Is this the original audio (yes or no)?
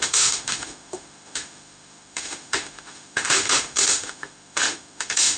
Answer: no